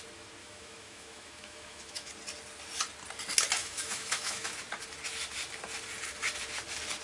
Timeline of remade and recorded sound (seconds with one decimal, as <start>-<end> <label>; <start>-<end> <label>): 0.0-0.4 recorded; 0.4-2.1 remade; 2.1-3.6 recorded; 3.6-4.5 remade; 4.5-7.0 recorded